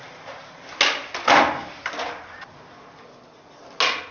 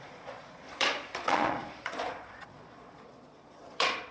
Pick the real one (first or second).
first